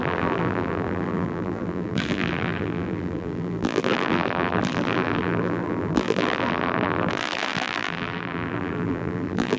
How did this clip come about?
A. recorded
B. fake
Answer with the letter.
B